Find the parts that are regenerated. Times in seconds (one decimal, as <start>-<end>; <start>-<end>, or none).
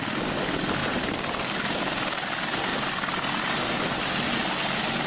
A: 0.8-1.8